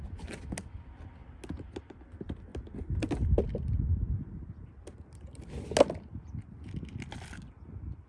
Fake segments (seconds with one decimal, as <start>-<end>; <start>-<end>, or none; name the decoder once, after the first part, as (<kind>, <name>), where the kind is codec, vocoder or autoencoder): none